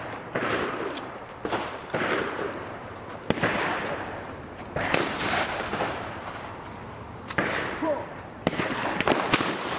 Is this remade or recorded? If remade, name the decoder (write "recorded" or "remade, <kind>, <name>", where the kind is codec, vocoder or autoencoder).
remade, vocoder, BigVGAN v2